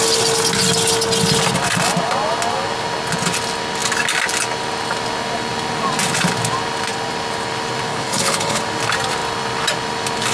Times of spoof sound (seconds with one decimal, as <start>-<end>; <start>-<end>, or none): 7.9-8.6